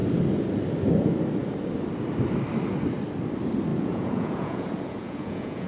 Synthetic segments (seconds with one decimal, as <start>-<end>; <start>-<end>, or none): 3.7-5.7